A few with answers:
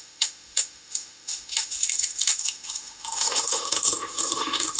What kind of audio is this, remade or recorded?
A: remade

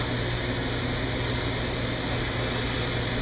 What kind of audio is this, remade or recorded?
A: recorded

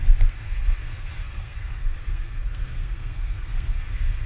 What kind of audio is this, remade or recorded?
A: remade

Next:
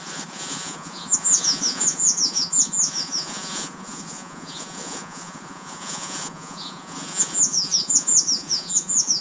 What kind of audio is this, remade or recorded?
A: remade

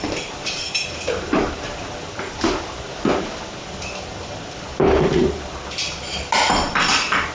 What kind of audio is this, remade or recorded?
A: remade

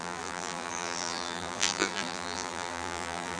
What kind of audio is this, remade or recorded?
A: remade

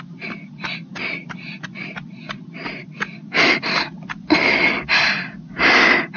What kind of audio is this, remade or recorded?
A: recorded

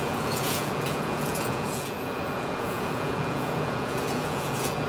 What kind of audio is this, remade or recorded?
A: remade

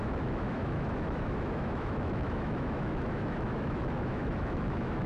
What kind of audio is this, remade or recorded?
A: remade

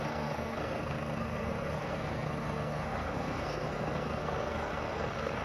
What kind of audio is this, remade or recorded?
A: remade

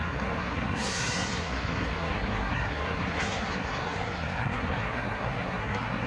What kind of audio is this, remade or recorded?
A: remade